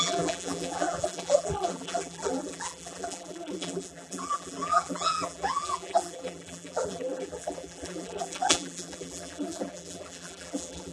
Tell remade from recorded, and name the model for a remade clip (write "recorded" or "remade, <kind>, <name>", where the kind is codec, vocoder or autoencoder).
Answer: remade, vocoder, BigVGAN v2